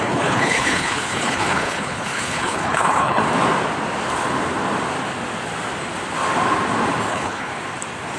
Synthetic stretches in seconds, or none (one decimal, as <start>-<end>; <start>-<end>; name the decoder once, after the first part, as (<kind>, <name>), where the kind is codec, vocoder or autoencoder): 0.0-3.2 (codec, HILCodec); 7.1-7.5